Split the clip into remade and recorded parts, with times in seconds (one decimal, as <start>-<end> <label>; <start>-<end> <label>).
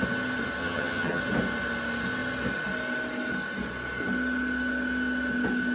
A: 0.0-0.6 recorded; 0.6-1.2 remade; 1.2-5.7 recorded